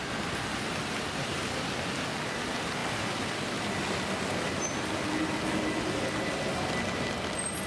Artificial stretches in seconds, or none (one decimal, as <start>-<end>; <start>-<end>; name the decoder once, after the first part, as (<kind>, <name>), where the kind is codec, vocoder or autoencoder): 2.8-4.2 (vocoder, BigVGAN v2)